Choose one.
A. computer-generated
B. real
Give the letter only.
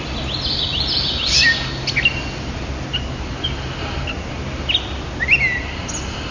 B